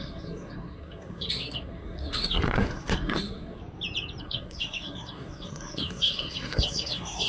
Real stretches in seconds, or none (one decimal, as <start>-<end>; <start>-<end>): 3.6-4.2